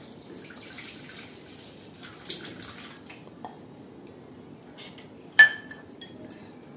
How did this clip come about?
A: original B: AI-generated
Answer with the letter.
A